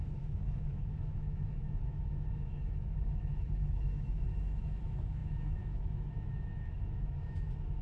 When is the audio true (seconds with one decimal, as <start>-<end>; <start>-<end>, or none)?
none